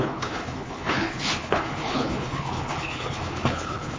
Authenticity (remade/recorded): remade